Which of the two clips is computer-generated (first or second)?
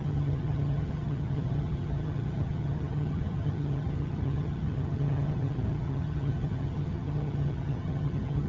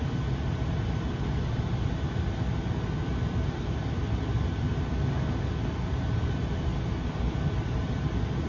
first